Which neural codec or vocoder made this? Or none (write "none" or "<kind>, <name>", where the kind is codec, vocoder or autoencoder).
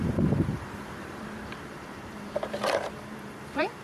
vocoder, BigVGAN v2